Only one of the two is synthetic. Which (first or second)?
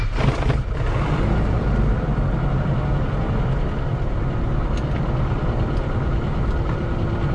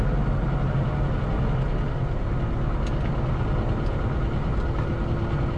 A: first